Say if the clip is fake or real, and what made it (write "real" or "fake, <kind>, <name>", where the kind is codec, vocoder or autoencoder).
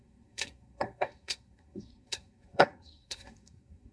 fake, codec, SNAC